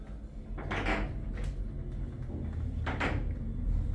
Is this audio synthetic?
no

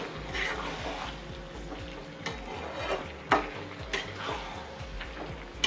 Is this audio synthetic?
no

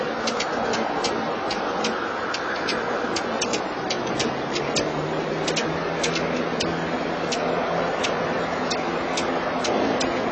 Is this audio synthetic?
no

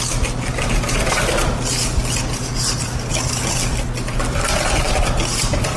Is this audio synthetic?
no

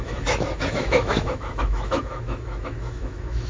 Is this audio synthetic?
yes